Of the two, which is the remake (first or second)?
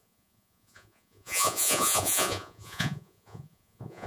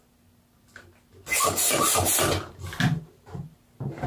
first